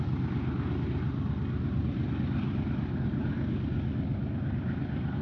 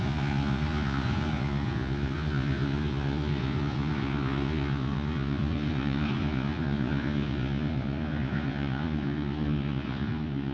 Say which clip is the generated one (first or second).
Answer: second